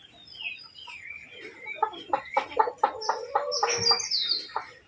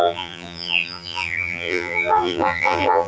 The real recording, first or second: first